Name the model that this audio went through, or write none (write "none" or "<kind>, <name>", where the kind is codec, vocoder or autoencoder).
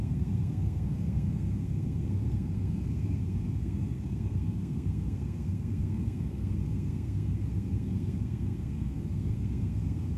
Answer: codec, SNAC